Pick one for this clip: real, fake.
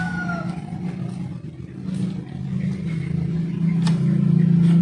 real